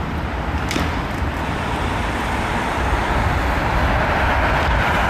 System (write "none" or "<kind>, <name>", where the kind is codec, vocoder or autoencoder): vocoder, BigVGAN v2